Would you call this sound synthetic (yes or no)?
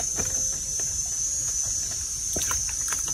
no